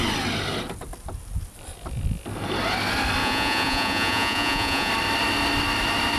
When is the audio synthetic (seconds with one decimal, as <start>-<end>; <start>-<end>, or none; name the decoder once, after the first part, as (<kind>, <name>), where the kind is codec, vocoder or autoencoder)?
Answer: 3.2-4.9 (vocoder, Vocos)